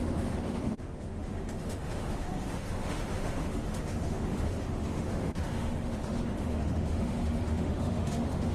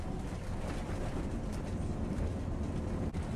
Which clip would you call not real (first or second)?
first